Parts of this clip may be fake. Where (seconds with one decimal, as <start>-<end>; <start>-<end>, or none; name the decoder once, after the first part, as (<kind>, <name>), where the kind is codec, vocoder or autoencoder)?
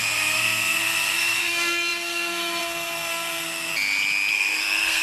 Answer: 0.0-3.7 (codec, SNAC); 4.3-5.0